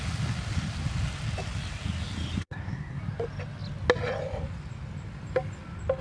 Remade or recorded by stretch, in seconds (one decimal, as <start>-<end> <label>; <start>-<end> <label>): 0.0-2.4 recorded; 2.4-3.0 remade; 3.0-6.0 recorded